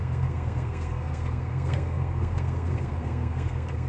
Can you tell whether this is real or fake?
fake